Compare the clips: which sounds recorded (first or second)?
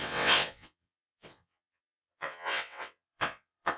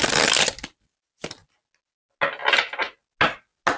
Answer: second